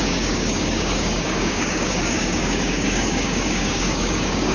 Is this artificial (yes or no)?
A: yes